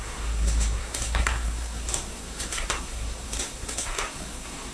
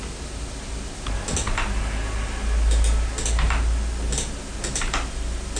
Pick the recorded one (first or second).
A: second